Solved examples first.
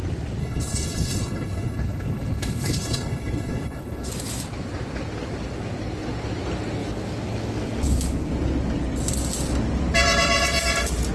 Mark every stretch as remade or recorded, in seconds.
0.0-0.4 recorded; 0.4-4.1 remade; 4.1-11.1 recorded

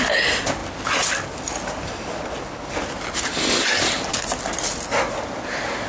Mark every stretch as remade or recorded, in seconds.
0.0-5.9 recorded

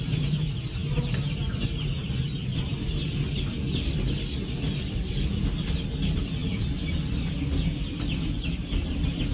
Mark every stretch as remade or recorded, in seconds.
0.0-9.3 recorded

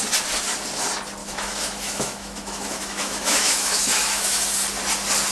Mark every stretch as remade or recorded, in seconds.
0.0-1.2 recorded; 1.2-4.4 remade; 4.4-5.3 recorded